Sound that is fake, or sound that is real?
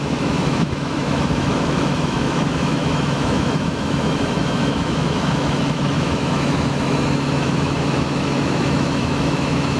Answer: fake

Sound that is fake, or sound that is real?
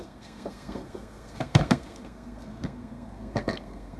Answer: fake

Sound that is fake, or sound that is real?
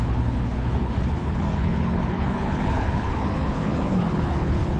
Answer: fake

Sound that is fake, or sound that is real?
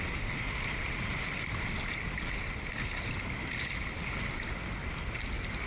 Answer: real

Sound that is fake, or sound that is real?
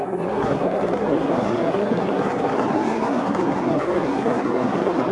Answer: fake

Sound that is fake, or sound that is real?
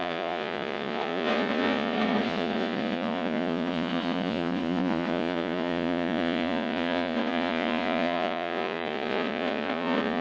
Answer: fake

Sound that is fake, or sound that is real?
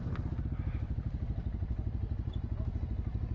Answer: real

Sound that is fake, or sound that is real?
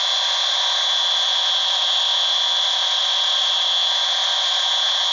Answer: real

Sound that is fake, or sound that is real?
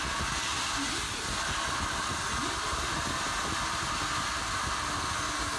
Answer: real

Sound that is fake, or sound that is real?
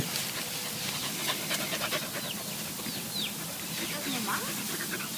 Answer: real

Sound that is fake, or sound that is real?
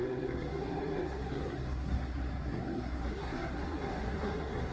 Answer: fake